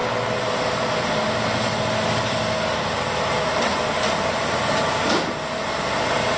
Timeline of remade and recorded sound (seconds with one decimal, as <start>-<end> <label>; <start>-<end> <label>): 0.0-6.4 recorded